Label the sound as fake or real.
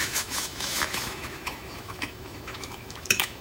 fake